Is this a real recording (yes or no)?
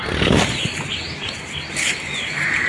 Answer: yes